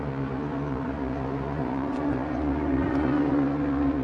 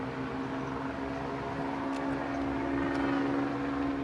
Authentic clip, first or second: second